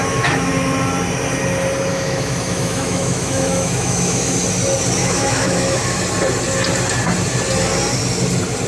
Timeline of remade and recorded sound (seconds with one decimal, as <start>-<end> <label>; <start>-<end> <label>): 0.0-0.5 remade; 0.5-1.9 recorded; 1.9-4.3 remade; 4.3-5.0 recorded; 5.0-6.0 remade; 6.0-8.7 recorded